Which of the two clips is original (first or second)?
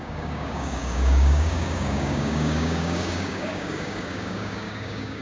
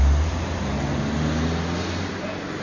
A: second